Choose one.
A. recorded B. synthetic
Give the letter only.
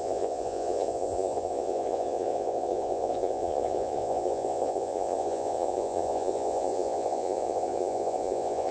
B